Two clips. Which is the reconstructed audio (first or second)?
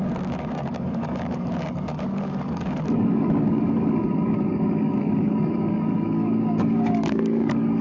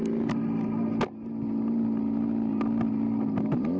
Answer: first